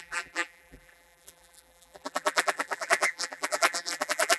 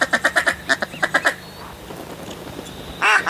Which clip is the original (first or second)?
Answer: second